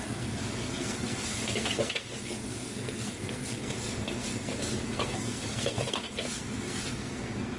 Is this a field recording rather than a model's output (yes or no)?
no